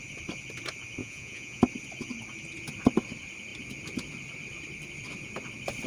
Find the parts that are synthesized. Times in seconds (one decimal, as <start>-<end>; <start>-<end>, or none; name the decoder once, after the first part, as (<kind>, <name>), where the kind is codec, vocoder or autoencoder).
1.0-1.6 (vocoder, Vocos)

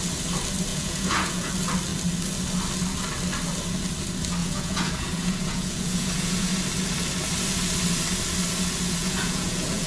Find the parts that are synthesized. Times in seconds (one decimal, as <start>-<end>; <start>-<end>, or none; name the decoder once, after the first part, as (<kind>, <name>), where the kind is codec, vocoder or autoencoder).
0.7-1.5 (vocoder, Vocos); 4.4-6.5; 9.0-9.9

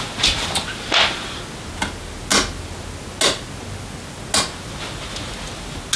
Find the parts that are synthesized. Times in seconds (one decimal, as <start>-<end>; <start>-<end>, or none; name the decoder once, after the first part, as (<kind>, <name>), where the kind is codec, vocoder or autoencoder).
none

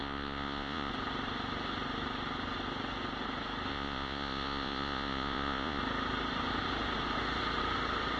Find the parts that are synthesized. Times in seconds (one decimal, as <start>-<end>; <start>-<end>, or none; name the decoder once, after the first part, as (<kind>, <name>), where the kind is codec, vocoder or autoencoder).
0.0-0.9 (vocoder, Vocos); 3.7-5.8